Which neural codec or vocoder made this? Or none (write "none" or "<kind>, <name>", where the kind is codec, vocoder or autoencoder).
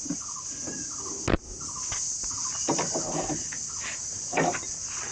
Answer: none